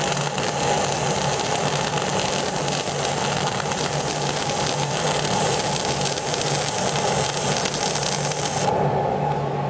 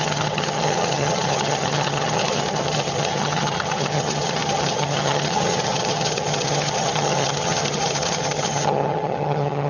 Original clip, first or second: first